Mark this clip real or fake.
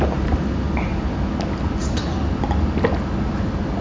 real